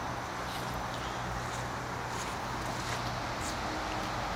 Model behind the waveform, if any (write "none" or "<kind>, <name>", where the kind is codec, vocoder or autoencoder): none